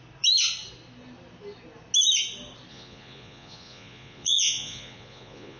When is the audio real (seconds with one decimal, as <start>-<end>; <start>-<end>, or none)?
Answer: 0.0-2.7